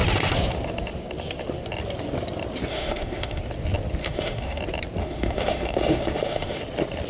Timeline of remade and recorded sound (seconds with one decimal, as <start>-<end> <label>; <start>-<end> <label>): 0.0-2.7 recorded; 2.7-3.4 remade; 3.4-4.0 recorded; 4.0-4.6 remade; 4.6-5.0 recorded; 5.0-6.6 remade; 6.6-7.1 recorded